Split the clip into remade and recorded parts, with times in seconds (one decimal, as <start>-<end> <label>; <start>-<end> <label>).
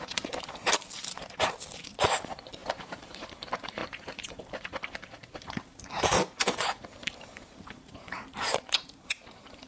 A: 0.0-9.7 remade